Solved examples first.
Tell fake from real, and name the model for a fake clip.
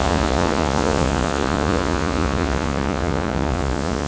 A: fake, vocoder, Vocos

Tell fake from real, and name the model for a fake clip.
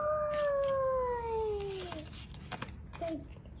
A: real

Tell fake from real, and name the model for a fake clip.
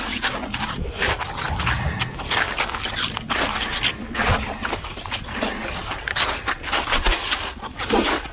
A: real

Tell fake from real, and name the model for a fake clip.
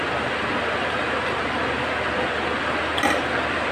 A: real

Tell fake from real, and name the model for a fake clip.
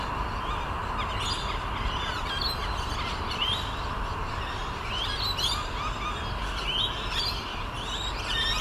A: real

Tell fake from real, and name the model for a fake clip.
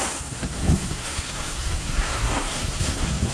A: fake, codec, SNAC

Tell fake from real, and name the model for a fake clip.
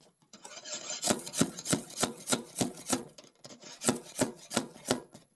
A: fake, vocoder, Vocos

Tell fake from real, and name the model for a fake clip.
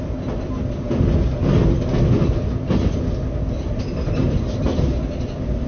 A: real